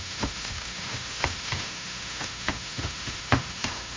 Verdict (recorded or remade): remade